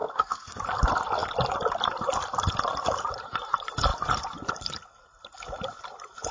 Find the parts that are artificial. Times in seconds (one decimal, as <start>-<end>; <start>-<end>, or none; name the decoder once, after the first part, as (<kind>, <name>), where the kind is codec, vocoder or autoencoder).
0.0-0.6 (codec, SNAC)